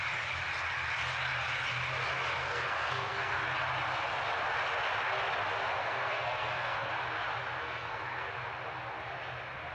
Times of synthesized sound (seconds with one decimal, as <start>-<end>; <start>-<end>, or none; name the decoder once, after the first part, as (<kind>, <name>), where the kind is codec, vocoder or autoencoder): 2.4-3.4 (codec, SNAC); 5.8-6.9; 7.6-8.3